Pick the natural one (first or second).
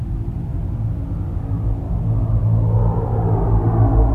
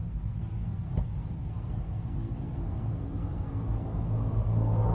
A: first